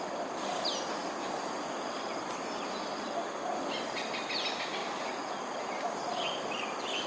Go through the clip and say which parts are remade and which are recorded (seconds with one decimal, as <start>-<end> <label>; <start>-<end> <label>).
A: 0.0-7.1 recorded